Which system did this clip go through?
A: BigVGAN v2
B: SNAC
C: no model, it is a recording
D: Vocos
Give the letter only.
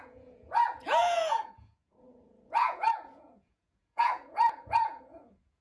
D